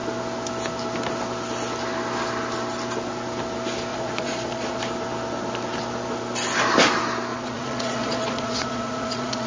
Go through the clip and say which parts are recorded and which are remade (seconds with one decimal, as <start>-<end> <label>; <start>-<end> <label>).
0.0-3.9 recorded; 3.9-4.8 remade; 4.8-7.3 recorded; 7.3-9.5 remade